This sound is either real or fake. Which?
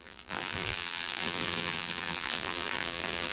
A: fake